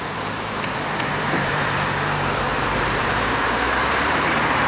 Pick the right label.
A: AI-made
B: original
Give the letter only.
A